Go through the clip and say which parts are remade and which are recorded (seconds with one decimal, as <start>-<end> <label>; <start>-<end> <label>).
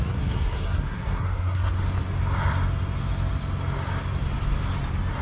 0.0-1.8 remade; 1.8-5.2 recorded